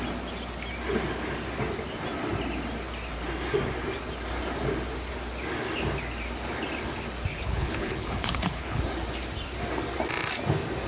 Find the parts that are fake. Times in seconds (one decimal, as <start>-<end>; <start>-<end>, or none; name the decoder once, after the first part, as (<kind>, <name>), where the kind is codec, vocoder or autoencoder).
7.3-8.8 (codec, HILCodec)